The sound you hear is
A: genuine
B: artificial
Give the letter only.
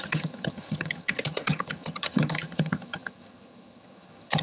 B